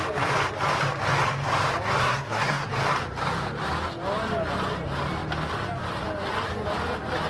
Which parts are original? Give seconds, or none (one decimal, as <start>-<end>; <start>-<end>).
0.0-2.0; 2.7-7.3